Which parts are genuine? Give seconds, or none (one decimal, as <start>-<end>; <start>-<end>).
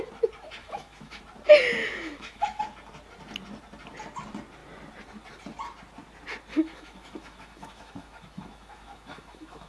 0.0-0.6; 1.2-1.8; 2.6-6.5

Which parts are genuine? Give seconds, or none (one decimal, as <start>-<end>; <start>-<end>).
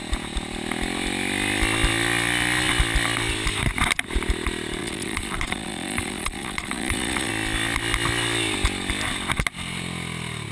0.0-4.8; 7.3-10.5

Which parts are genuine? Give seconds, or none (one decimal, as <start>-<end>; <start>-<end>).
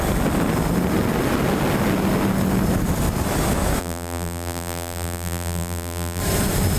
0.0-3.8; 6.2-6.8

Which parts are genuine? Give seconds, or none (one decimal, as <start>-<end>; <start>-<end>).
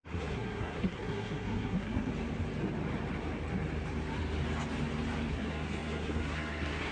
2.1-5.3